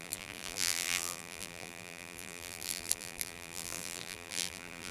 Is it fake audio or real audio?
fake